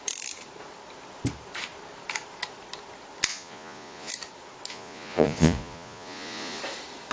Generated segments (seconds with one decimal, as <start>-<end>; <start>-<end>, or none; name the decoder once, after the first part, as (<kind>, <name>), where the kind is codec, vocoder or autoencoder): 3.3-4.1 (vocoder, Vocos); 4.7-6.6